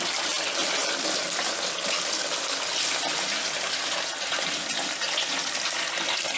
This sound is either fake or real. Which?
real